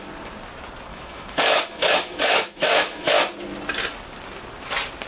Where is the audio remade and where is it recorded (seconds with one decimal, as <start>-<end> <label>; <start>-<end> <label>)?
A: 0.0-0.9 recorded; 0.9-3.1 remade; 3.1-5.1 recorded